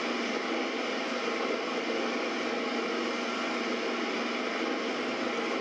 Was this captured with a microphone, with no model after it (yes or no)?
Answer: yes